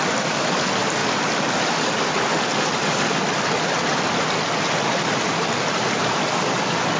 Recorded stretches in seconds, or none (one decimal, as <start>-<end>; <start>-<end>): 0.0-7.0